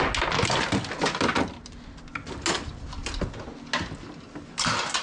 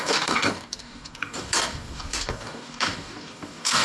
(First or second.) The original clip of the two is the first